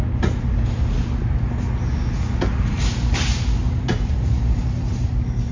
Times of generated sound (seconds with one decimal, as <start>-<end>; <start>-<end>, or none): 3.6-4.6